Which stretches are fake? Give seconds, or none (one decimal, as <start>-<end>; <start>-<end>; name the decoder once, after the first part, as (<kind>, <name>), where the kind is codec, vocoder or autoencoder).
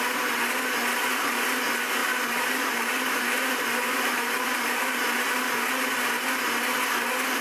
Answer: 2.0-5.4 (vocoder, BigVGAN v2)